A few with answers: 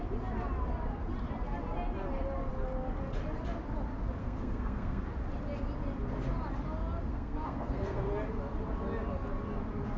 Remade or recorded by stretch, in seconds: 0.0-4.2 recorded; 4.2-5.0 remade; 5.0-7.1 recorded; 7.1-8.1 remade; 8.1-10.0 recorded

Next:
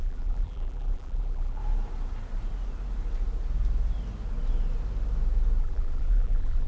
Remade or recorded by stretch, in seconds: 0.0-1.6 remade; 1.6-5.6 recorded; 5.6-6.7 remade

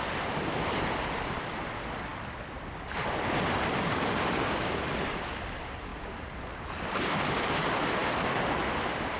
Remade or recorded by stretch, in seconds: 0.0-9.2 recorded